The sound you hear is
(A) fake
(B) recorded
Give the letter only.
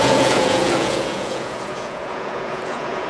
A